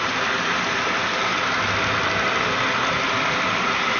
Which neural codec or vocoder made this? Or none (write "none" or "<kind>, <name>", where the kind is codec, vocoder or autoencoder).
none